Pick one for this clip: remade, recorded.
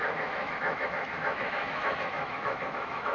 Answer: remade